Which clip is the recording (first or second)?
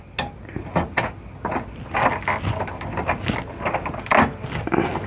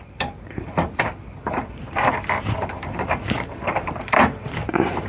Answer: first